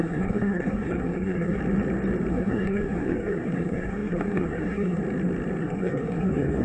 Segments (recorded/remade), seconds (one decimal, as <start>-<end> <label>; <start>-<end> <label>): 0.0-1.6 remade; 1.6-2.3 recorded; 2.3-5.0 remade; 5.0-5.6 recorded; 5.6-6.6 remade